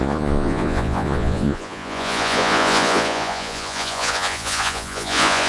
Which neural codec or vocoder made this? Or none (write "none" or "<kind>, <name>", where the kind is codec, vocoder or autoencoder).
vocoder, Vocos